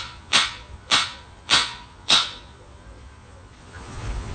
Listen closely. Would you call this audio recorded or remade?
remade